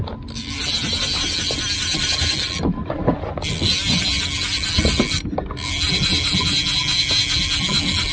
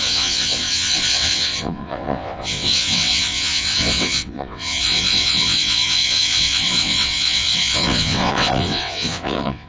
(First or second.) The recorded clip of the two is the first